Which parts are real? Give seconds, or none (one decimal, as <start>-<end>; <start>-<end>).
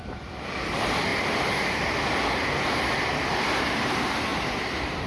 1.1-3.6; 4.3-5.1